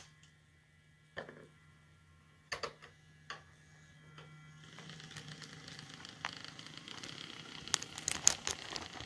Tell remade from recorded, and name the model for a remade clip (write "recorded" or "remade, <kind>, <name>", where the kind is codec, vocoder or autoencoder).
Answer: recorded